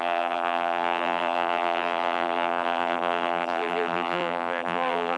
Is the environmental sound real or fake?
fake